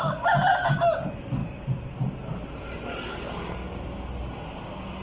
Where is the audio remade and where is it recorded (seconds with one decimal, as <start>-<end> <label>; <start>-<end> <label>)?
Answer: 0.0-3.1 recorded; 3.1-3.8 remade; 3.8-5.0 recorded